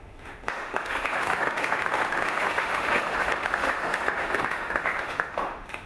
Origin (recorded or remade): remade